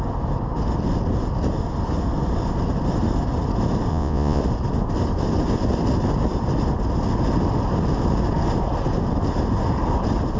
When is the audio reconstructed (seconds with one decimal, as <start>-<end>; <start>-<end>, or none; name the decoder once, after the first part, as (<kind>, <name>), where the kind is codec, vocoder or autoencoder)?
3.9-4.4 (vocoder, Vocos)